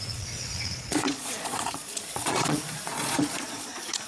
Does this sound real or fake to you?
fake